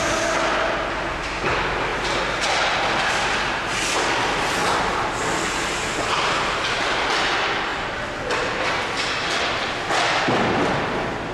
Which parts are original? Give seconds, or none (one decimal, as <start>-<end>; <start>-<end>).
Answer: 0.0-11.3